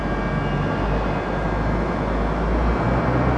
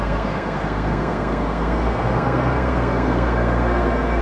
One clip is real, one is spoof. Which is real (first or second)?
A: first